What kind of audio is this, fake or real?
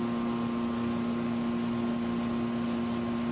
real